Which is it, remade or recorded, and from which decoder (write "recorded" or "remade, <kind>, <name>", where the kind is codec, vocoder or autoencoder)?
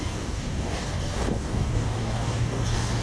remade, codec, DAC